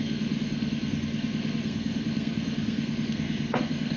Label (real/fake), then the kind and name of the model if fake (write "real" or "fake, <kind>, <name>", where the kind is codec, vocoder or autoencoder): fake, codec, SNAC